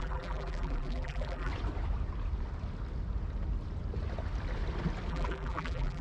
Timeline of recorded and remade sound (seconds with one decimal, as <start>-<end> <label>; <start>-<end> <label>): 0.0-1.5 remade; 1.5-5.1 recorded; 5.1-6.0 remade